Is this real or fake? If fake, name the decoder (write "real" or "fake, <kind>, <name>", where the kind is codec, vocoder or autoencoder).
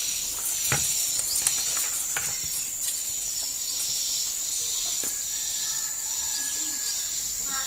real